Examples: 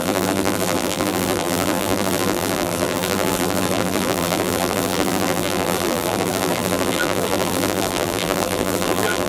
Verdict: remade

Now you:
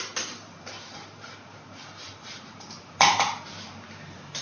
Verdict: remade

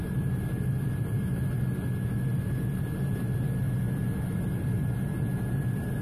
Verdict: recorded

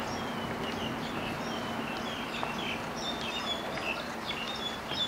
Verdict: recorded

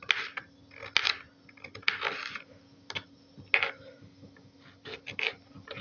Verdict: recorded